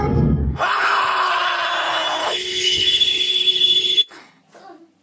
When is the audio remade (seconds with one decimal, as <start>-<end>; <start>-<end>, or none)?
0.4-1.3; 2.2-4.4